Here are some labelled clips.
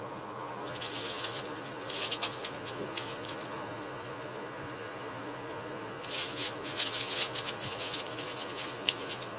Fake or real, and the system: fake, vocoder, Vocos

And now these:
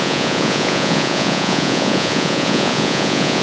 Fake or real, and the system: fake, vocoder, Vocos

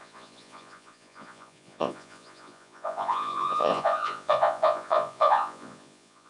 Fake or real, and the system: fake, vocoder, Vocos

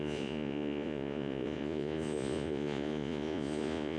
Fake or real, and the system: fake, vocoder, Vocos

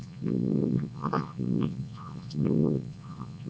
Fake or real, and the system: fake, vocoder, Vocos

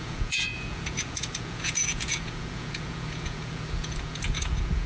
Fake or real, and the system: fake, vocoder, Vocos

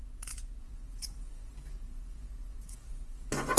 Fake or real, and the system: fake, vocoder, Vocos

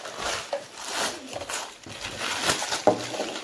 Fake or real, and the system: real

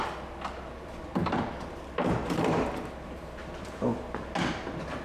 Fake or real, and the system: real